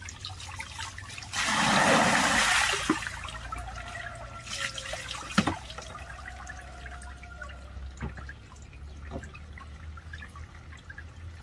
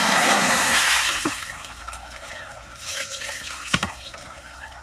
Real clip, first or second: first